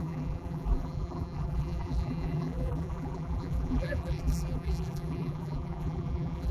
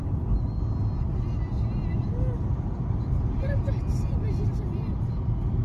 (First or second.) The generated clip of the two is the first